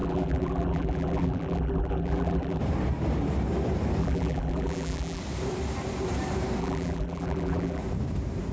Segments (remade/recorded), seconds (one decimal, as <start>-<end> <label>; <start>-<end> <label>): 0.0-2.6 remade; 2.6-4.0 recorded; 4.0-5.2 remade; 5.2-6.6 recorded; 6.6-7.8 remade; 7.8-8.5 recorded